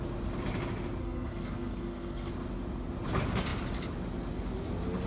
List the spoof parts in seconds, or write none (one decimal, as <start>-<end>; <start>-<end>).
1.0-2.3